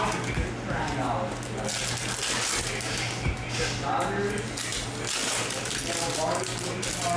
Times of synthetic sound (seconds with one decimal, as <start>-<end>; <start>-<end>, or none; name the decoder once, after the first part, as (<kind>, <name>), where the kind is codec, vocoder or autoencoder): none